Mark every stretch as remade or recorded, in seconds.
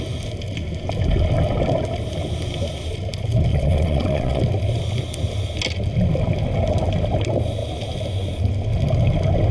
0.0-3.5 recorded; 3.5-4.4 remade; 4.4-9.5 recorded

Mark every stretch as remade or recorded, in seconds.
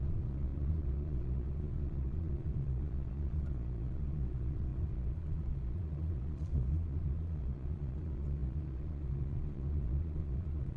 0.0-10.8 remade